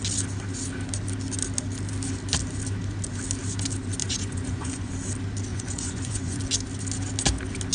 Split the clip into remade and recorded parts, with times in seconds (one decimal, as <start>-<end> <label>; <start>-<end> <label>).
0.0-4.0 recorded; 4.0-4.9 remade; 4.9-5.5 recorded; 5.5-6.4 remade; 6.4-7.7 recorded